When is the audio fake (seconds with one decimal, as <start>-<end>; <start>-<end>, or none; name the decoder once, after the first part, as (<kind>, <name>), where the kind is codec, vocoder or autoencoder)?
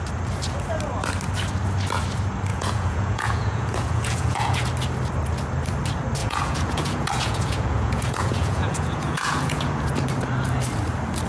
2.5-4.7 (vocoder, Vocos); 6.2-10.0